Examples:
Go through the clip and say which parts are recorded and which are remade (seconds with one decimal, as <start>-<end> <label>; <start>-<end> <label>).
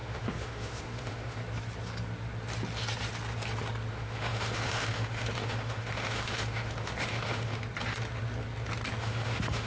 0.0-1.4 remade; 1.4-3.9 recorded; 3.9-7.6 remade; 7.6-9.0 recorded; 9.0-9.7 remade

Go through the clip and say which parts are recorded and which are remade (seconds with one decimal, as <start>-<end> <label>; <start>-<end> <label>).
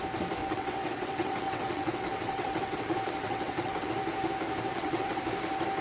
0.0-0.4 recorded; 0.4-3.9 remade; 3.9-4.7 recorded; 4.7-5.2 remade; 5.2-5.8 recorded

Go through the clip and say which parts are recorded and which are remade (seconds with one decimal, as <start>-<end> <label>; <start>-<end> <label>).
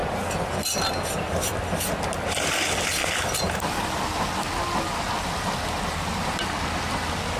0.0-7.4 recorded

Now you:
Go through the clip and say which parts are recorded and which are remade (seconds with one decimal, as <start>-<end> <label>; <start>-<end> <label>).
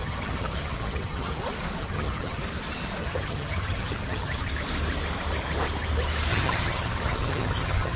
0.0-1.4 remade; 1.4-1.8 recorded; 1.8-2.4 remade; 2.4-3.0 recorded; 3.0-4.5 remade; 4.5-6.3 recorded; 6.3-8.0 remade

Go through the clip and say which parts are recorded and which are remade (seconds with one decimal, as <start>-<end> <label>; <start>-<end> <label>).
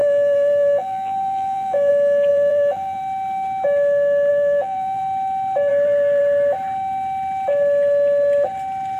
0.0-1.9 remade; 1.9-2.3 recorded; 2.3-3.0 remade; 3.0-4.3 recorded; 4.3-5.0 remade; 5.0-5.7 recorded; 5.7-6.2 remade; 6.2-9.0 recorded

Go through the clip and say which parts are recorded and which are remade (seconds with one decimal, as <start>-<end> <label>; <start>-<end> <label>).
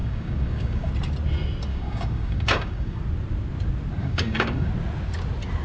0.0-0.9 remade; 0.9-1.7 recorded; 1.7-3.0 remade; 3.0-4.0 recorded; 4.0-4.7 remade; 4.7-5.6 recorded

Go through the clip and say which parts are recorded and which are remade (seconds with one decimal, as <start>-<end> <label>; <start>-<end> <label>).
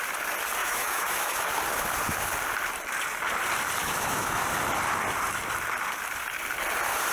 0.0-0.6 recorded; 0.6-1.5 remade; 1.5-3.8 recorded; 3.8-4.4 remade; 4.4-7.1 recorded